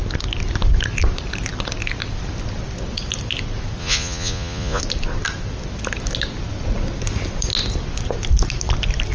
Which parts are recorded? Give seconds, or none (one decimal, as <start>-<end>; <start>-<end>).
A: 0.0-3.8; 4.8-9.1